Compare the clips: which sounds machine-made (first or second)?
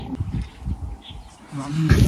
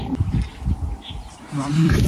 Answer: second